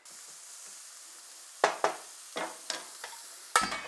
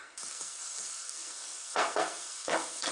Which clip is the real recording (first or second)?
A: first